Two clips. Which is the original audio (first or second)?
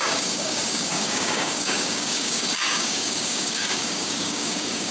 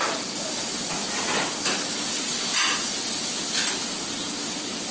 second